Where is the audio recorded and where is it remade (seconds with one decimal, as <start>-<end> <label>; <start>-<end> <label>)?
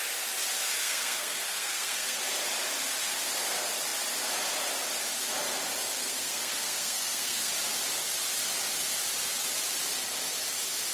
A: 0.0-0.8 recorded; 0.8-2.2 remade; 2.2-6.0 recorded; 6.0-7.5 remade; 7.5-10.9 recorded